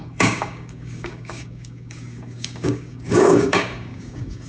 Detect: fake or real fake